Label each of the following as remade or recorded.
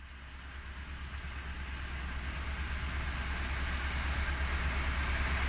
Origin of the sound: recorded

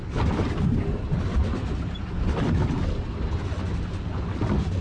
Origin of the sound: recorded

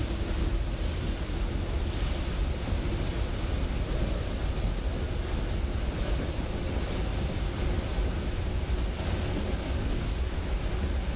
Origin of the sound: recorded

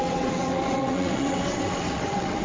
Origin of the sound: remade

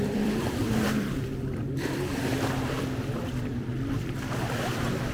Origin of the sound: remade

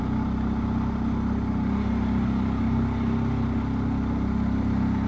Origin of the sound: recorded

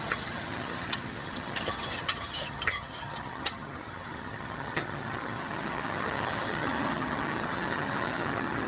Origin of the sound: remade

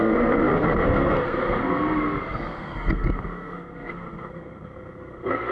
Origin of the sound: remade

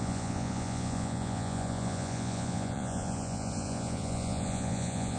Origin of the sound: remade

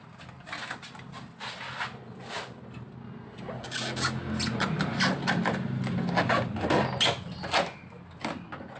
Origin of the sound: recorded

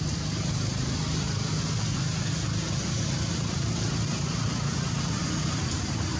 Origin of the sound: recorded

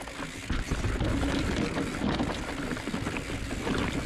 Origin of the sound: recorded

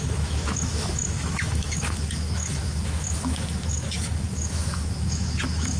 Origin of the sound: remade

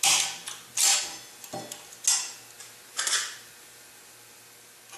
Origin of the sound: recorded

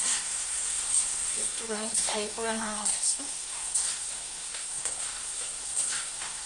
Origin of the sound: remade